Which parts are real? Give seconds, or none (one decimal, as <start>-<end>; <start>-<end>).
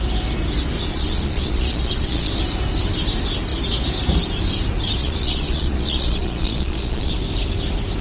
0.0-0.9; 2.3-5.0; 7.1-8.0